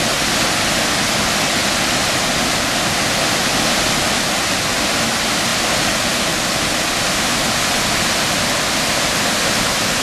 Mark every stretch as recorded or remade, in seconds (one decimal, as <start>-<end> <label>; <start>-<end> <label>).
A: 0.0-10.0 recorded